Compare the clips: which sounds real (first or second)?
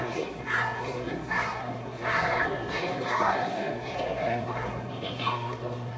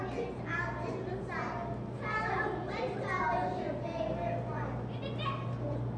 second